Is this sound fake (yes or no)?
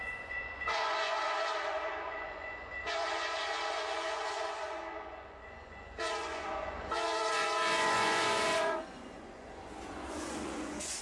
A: yes